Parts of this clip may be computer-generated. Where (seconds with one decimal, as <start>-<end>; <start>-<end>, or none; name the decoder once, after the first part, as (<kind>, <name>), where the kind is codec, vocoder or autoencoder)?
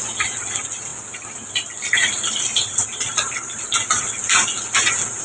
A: 0.9-4.0 (vocoder, BigVGAN v2)